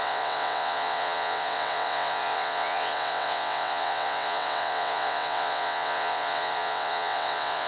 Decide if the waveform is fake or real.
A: fake